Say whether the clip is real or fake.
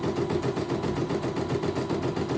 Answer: real